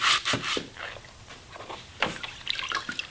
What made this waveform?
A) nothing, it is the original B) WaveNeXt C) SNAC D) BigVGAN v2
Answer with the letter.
A